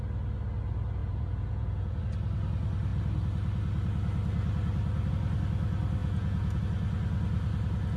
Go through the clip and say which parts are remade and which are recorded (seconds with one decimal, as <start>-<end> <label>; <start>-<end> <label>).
0.0-1.0 recorded; 1.0-2.0 remade; 2.0-6.0 recorded; 6.0-6.6 remade; 6.6-8.0 recorded